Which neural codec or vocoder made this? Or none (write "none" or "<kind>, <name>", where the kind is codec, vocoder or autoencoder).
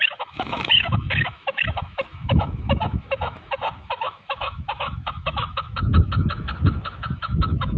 autoencoder, DAC-VAE